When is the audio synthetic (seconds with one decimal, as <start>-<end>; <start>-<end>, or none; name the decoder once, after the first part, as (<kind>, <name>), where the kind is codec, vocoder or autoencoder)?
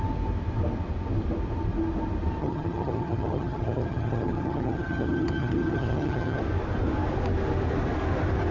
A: 2.4-6.4 (vocoder, HiFi-GAN)